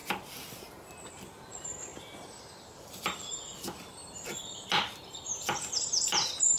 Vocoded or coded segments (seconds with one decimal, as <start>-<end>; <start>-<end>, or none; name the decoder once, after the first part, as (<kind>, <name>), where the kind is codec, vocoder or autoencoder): 1.1-1.9 (vocoder, BigVGAN v2); 3.0-6.6